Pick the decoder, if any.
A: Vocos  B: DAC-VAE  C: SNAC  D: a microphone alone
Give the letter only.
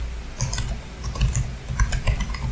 D